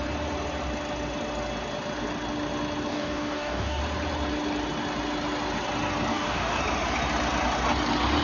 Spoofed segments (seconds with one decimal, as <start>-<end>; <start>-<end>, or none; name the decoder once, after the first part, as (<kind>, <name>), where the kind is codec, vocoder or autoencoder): 2.9-3.8 (codec, DAC); 6.1-6.6